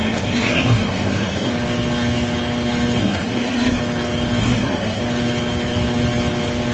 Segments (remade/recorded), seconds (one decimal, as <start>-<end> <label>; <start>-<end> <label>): 0.0-1.5 remade; 1.5-3.0 recorded; 3.0-3.8 remade; 3.8-4.4 recorded; 4.4-5.0 remade; 5.0-6.7 recorded